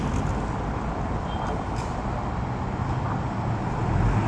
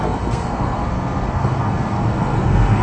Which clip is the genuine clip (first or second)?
first